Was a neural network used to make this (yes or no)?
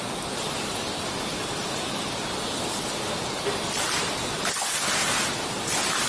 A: no